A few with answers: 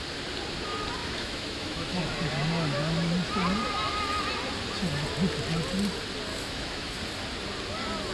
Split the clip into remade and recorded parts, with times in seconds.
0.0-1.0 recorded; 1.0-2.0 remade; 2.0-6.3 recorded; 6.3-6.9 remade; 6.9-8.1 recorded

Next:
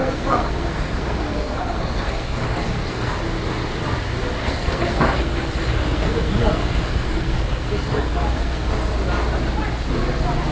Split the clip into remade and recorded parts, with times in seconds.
0.0-3.1 remade; 3.1-4.4 recorded; 4.4-8.7 remade; 8.7-10.5 recorded

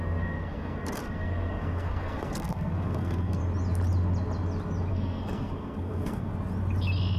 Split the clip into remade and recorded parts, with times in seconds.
0.0-3.4 remade; 3.4-4.9 recorded; 4.9-6.3 remade; 6.3-7.2 recorded

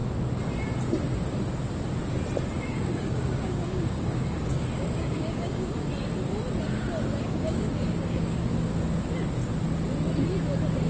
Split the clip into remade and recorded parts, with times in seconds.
0.0-2.7 recorded; 2.7-5.9 remade; 5.9-7.2 recorded; 7.2-8.5 remade; 8.5-10.9 recorded

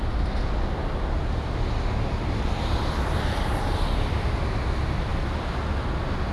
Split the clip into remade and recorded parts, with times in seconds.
0.0-6.3 recorded

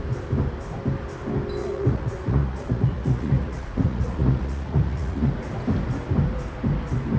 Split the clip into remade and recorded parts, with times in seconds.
0.0-1.6 recorded; 1.6-5.3 remade; 5.3-7.2 recorded

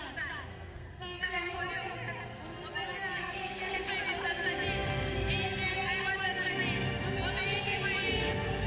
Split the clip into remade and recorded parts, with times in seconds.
0.0-0.5 recorded; 0.5-1.6 remade; 1.6-3.2 recorded; 3.2-3.9 remade; 3.9-8.7 recorded